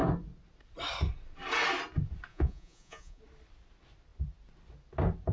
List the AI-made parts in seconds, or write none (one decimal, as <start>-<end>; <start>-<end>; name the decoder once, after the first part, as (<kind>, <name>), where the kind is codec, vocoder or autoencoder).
2.3-3.2 (vocoder, Vocos)